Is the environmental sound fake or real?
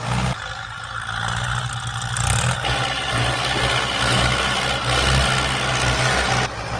real